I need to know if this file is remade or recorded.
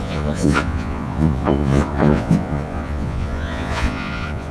remade